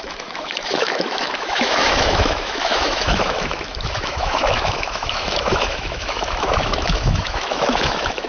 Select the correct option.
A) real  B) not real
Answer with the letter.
B